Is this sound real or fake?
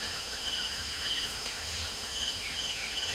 fake